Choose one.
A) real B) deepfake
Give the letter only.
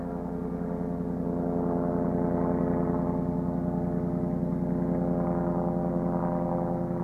A